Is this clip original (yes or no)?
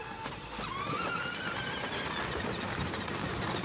yes